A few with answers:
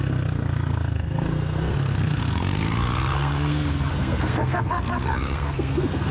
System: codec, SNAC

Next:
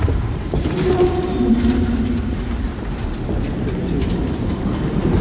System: none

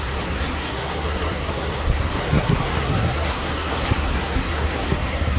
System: codec, SNAC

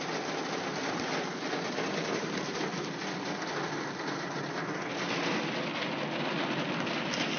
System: none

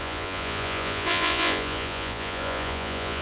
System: vocoder, Vocos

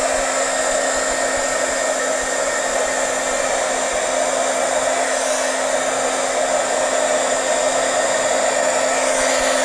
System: none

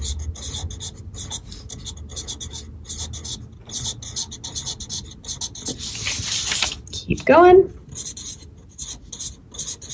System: none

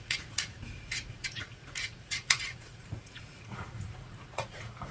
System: vocoder, Vocos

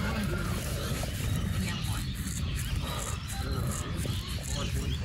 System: vocoder, BigVGAN v2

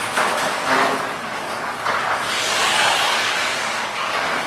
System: codec, DAC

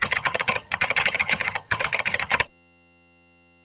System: vocoder, HiFi-GAN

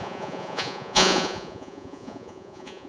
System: vocoder, Vocos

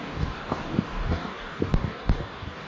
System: codec, DAC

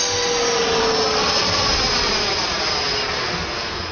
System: none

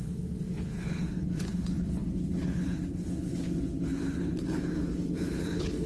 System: codec, HILCodec